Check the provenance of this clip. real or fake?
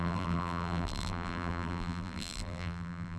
fake